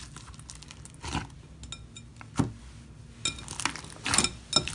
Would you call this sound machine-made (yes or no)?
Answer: no